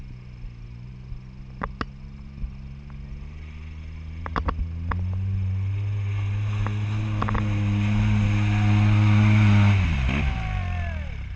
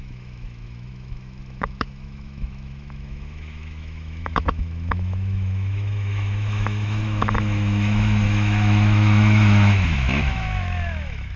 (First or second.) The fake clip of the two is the second